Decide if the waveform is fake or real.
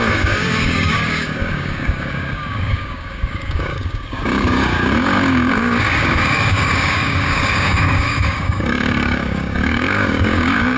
fake